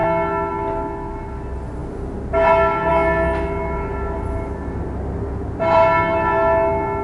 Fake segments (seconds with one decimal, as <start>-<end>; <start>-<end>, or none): none